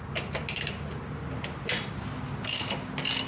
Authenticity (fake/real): real